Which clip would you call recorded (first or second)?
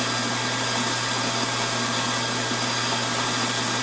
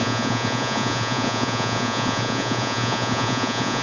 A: first